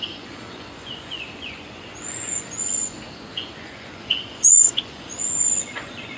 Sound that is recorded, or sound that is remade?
remade